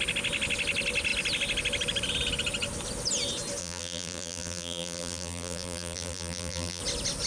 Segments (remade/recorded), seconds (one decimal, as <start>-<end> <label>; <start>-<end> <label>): 0.0-3.6 recorded; 3.6-6.8 remade; 6.8-7.3 recorded